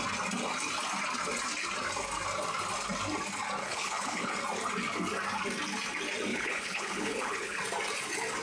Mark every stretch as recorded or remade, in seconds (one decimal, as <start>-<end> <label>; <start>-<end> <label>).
0.0-3.6 recorded; 3.6-4.3 remade; 4.3-6.3 recorded; 6.3-7.6 remade; 7.6-8.4 recorded